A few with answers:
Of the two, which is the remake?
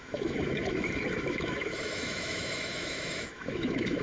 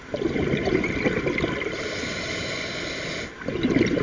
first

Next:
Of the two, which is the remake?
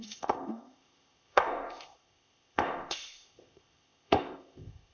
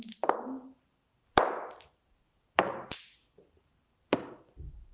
first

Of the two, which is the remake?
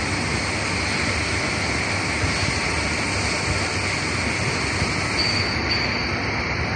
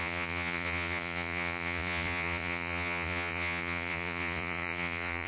second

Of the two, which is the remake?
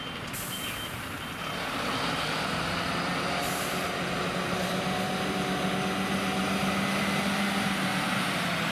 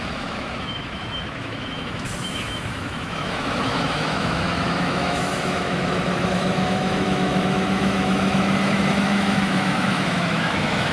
second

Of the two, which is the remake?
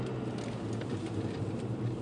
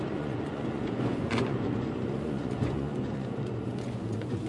second